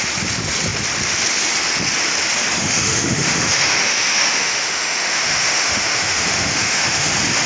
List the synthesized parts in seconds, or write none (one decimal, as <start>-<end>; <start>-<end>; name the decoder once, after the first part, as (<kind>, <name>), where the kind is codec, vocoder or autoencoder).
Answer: 2.6-7.1 (autoencoder, DAC-VAE)